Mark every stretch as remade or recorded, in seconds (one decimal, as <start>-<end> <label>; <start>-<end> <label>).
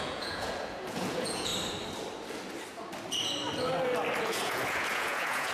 0.0-1.5 remade; 1.5-4.2 recorded; 4.2-5.5 remade